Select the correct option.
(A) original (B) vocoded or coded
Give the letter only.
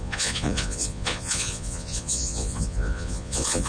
B